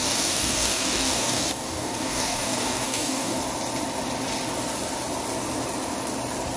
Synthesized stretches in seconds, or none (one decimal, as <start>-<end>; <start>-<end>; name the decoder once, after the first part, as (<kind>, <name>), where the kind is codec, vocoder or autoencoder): 0.0-3.4 (codec, DAC)